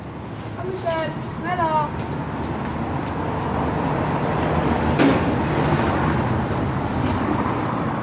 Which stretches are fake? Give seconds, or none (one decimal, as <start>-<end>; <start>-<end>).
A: none